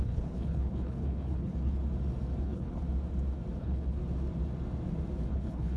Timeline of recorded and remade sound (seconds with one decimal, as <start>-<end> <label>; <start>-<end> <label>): 0.0-1.8 remade; 1.8-2.4 recorded; 2.4-2.8 remade; 2.8-3.6 recorded; 3.6-4.0 remade; 4.0-5.3 recorded; 5.3-5.8 remade